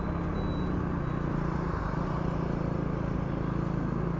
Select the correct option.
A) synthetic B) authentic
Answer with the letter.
B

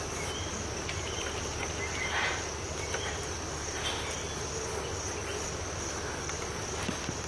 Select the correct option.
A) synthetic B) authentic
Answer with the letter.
B